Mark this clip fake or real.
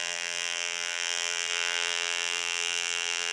fake